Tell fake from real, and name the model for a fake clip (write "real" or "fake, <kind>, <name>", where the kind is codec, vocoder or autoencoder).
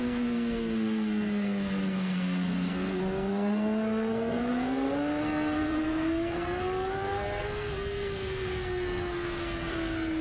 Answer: fake, codec, SNAC